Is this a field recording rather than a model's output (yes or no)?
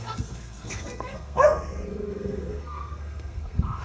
no